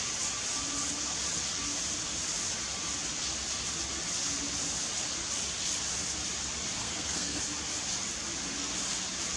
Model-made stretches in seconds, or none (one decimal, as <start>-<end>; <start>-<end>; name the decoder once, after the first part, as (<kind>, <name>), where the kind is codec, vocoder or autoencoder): 6.8-7.4 (codec, SNAC)